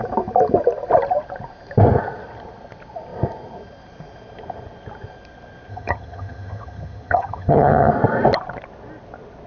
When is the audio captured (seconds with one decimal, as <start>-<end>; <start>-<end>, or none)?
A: 0.0-5.7; 7.9-9.5